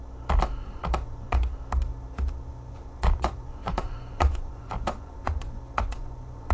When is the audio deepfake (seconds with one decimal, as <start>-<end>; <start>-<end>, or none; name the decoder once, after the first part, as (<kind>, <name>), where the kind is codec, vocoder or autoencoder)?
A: 0.6-1.5 (vocoder, Vocos); 2.5-6.5